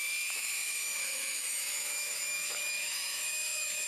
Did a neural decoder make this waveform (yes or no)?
yes